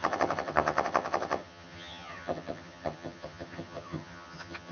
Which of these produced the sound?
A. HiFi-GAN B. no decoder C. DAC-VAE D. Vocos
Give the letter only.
A